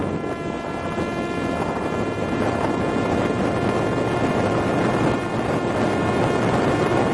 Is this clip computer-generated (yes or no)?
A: no